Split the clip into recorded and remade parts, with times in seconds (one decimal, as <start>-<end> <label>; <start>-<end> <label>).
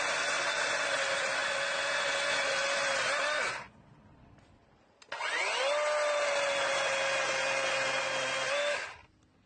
0.0-9.5 recorded